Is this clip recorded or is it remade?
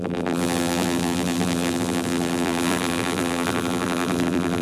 remade